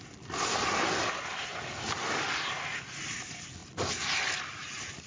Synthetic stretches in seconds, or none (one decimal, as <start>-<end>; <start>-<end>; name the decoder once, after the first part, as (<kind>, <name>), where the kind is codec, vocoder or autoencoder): none